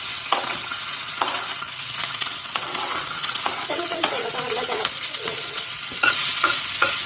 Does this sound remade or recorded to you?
remade